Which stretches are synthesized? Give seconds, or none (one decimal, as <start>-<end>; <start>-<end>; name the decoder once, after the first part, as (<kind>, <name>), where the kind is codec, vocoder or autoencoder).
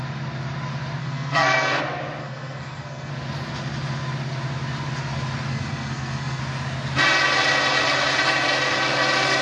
1.0-1.8 (codec, SNAC); 2.2-3.1; 5.5-6.4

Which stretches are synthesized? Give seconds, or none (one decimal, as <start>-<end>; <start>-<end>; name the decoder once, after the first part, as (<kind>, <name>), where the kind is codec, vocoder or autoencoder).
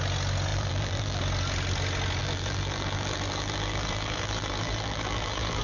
0.5-1.2 (vocoder, BigVGAN v2); 2.2-5.6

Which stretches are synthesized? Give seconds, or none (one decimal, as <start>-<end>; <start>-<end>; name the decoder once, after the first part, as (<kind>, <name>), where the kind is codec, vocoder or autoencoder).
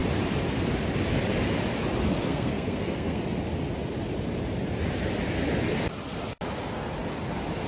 2.3-3.2 (codec, SNAC)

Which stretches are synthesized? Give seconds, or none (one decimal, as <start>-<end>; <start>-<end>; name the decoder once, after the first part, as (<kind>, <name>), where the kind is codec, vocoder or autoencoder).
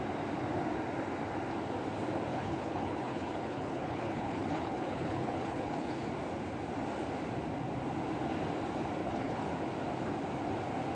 2.3-6.1 (codec, HILCodec); 9.0-9.5